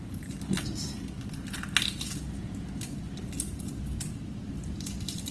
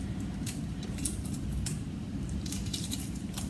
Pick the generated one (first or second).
second